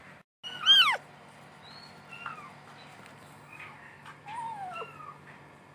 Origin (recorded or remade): recorded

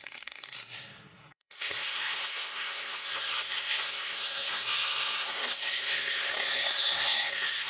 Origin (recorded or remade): remade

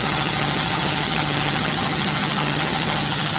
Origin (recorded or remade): remade